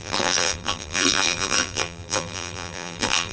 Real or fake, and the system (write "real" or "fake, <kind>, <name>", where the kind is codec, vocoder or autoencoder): fake, vocoder, BigVGAN v2